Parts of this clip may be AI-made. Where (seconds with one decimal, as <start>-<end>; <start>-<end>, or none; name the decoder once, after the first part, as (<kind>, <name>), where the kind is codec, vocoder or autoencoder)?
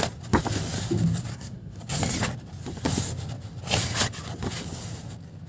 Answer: 1.3-1.8 (codec, SNAC)